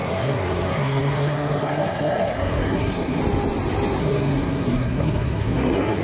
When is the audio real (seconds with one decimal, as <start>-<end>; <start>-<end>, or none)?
3.2-4.0